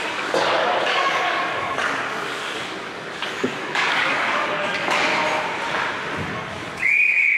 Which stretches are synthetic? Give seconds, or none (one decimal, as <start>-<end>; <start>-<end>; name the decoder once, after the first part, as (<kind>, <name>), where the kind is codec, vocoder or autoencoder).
0.0-5.1 (codec, DAC); 6.5-7.4